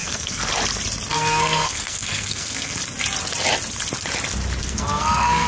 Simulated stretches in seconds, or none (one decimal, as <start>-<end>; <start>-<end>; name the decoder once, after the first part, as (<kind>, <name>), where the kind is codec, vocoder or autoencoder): 0.0-0.5 (codec, SNAC); 1.1-2.8; 4.6-5.5

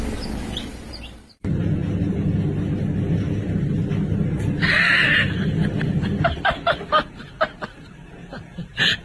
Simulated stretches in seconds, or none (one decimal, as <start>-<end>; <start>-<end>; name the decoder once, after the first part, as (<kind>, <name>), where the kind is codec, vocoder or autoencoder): 8.2-9.0 (vocoder, Vocos)